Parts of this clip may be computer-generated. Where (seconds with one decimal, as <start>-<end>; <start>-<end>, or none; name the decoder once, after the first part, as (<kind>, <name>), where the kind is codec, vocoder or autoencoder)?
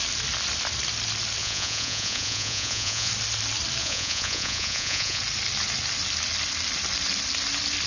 1.4-3.1 (vocoder, Vocos); 3.8-5.2